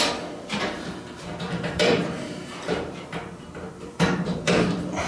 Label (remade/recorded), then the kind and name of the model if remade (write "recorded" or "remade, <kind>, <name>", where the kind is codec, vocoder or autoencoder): remade, vocoder, BigVGAN v2